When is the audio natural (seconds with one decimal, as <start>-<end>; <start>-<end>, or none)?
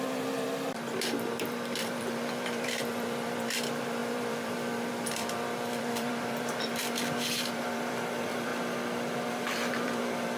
8.5-9.3